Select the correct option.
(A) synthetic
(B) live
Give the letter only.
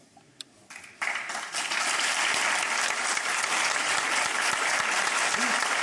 B